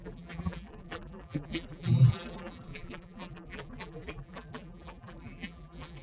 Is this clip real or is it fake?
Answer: fake